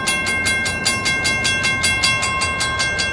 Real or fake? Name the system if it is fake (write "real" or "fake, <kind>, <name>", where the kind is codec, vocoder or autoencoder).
real